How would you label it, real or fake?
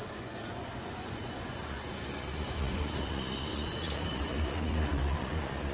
fake